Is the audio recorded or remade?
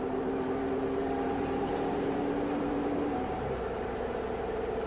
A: remade